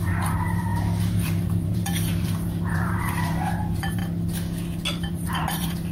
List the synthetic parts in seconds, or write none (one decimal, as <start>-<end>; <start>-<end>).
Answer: 0.0-4.0; 5.0-5.9